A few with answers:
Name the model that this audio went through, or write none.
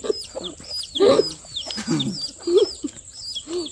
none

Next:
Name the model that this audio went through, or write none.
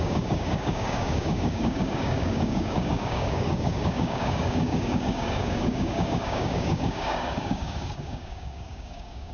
codec, DAC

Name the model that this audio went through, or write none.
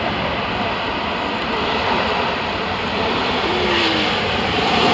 vocoder, BigVGAN v2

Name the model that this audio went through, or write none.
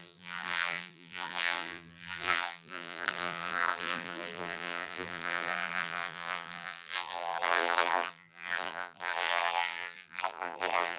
vocoder, BigVGAN v2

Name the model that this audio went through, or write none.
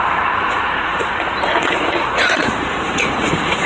vocoder, Vocos